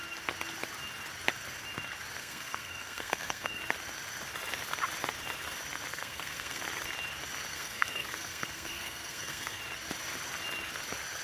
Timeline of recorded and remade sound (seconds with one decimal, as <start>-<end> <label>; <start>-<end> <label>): 0.0-2.2 recorded; 2.2-3.6 remade; 3.6-5.9 recorded; 5.9-6.6 remade; 6.6-7.5 recorded; 7.5-9.6 remade; 9.6-11.2 recorded